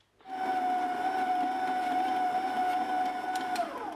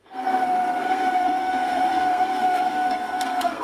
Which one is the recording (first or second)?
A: first